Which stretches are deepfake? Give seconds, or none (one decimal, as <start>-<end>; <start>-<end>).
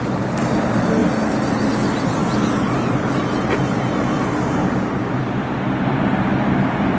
none